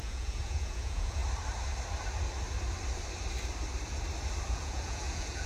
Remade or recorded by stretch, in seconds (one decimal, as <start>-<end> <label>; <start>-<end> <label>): 0.0-1.2 remade; 1.2-4.5 recorded; 4.5-5.5 remade